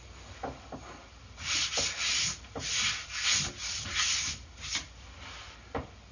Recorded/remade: recorded